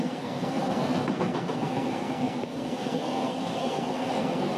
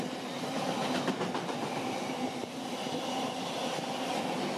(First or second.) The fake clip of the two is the first